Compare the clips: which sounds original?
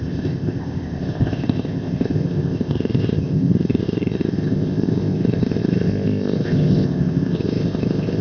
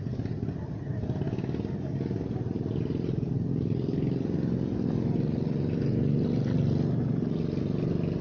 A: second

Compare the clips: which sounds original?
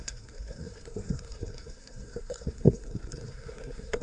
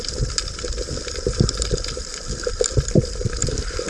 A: second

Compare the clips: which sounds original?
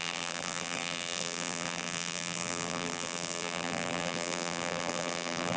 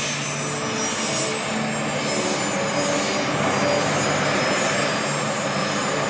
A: second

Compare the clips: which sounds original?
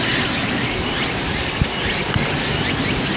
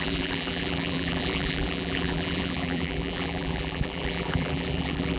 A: first